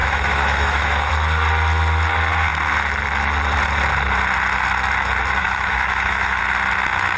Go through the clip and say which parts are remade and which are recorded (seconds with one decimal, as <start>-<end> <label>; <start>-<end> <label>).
0.0-1.1 remade; 1.1-5.4 recorded; 5.4-6.4 remade; 6.4-7.2 recorded